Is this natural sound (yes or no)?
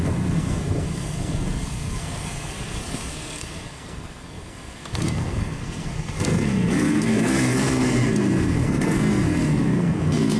no